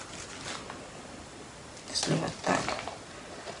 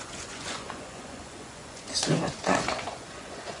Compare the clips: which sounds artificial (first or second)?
second